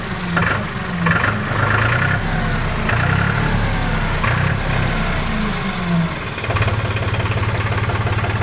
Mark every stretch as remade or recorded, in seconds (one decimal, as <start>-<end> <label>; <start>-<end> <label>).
0.0-8.4 recorded